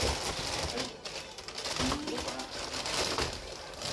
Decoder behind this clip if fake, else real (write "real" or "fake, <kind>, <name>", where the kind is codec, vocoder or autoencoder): real